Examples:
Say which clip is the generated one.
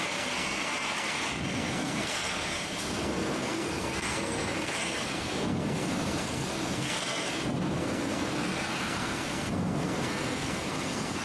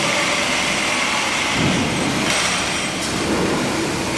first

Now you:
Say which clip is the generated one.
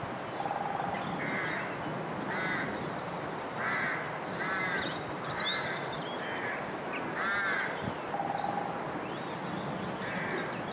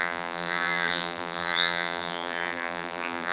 second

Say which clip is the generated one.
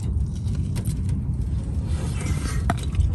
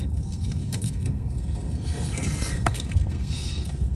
second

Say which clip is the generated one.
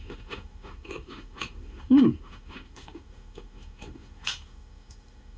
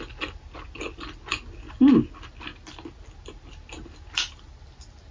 first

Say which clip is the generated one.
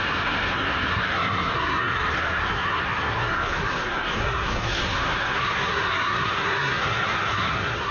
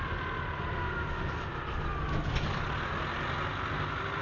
first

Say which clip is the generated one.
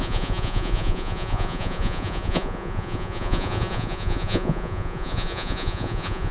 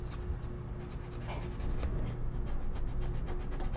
first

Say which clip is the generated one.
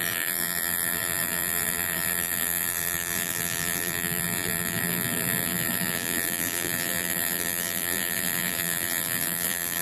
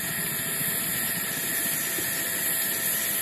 first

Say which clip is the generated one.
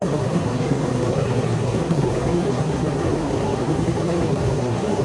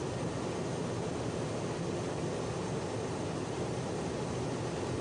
first